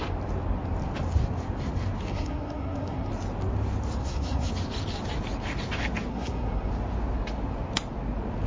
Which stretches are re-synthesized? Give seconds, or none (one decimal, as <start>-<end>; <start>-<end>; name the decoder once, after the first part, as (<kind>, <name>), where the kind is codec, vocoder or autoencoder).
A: 2.1-3.1 (codec, SNAC); 4.0-4.5; 6.1-6.7